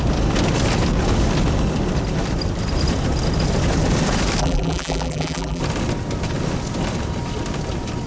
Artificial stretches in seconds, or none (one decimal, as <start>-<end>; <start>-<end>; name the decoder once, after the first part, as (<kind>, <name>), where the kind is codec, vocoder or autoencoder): 4.4-5.6 (vocoder, BigVGAN v2)